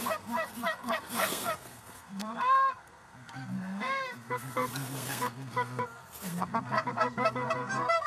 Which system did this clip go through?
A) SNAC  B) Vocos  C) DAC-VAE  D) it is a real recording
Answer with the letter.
A